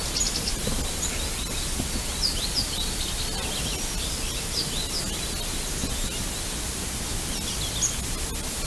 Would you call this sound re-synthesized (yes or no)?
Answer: no